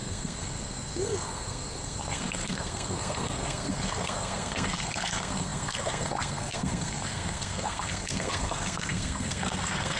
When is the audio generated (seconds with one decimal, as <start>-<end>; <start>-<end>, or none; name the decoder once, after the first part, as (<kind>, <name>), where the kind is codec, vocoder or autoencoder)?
0.0-10.0 (codec, SNAC)